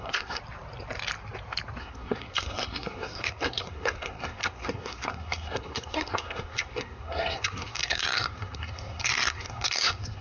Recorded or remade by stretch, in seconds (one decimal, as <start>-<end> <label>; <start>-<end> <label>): 0.0-0.4 remade; 0.4-1.8 recorded; 1.8-10.2 remade